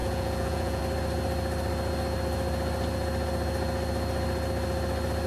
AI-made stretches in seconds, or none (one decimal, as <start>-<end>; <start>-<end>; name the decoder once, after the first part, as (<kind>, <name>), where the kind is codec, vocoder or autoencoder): 0.0-0.8 (vocoder, Vocos)